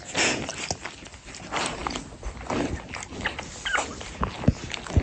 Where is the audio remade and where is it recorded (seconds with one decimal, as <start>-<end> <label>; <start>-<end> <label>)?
0.0-5.0 recorded